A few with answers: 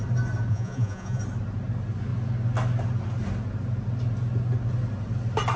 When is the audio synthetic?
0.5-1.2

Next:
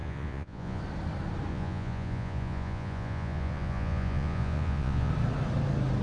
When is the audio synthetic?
0.0-0.8; 1.5-5.1